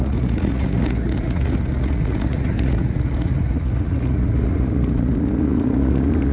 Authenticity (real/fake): fake